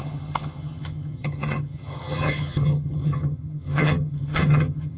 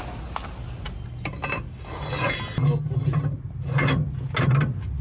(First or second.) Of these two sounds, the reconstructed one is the first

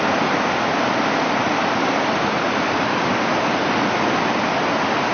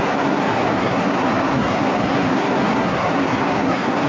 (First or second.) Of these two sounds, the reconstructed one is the second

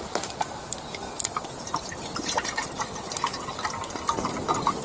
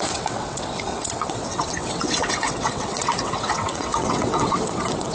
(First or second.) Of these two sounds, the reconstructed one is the second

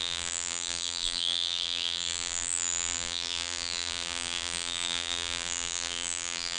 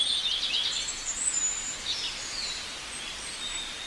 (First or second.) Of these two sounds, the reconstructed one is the first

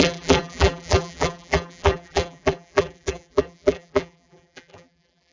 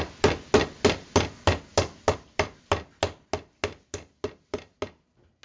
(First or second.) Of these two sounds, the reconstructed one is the first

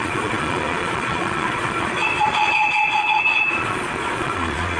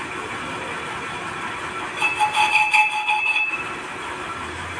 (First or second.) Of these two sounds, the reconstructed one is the first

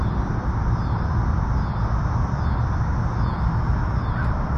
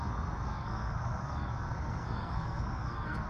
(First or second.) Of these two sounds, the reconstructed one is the second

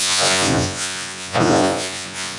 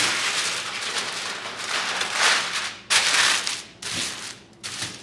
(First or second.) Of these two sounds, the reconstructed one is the first